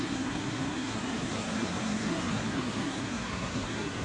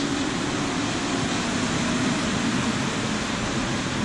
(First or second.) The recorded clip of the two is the second